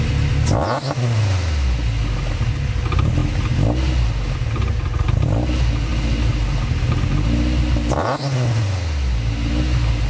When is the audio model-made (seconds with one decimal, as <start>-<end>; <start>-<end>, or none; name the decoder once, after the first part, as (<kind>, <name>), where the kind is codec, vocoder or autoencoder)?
none